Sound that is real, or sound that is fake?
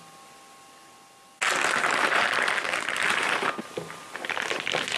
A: real